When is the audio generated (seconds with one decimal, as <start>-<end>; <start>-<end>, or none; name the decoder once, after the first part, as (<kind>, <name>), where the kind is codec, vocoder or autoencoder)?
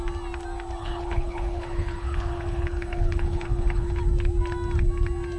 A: 0.8-4.0 (codec, HILCodec)